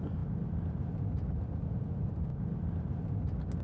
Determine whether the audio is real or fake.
real